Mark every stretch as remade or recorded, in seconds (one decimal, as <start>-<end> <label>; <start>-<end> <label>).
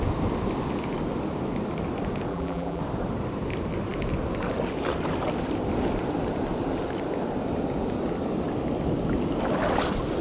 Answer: 0.0-2.3 recorded; 2.3-2.8 remade; 2.8-10.2 recorded